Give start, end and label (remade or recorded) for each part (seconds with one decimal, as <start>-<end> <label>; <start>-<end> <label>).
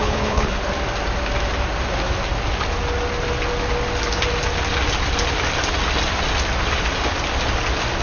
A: 0.0-0.7 remade; 0.7-8.0 recorded